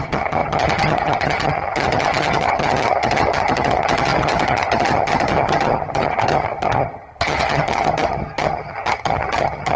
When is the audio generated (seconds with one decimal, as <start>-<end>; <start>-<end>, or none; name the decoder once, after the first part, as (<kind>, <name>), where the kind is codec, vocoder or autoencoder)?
0.0-9.8 (vocoder, HiFi-GAN)